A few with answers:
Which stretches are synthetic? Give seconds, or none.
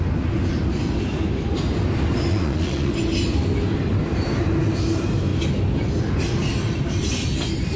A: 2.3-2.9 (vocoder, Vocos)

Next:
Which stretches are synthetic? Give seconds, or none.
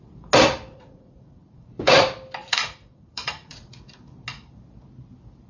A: 0.7-2.0 (vocoder, Vocos); 2.4-3.8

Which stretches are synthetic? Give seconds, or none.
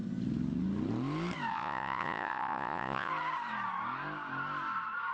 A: 1.5-3.1 (vocoder, Vocos)